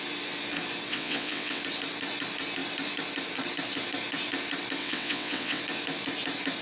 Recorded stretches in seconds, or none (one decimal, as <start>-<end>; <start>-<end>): 0.0-0.9; 1.6-4.8; 5.6-6.6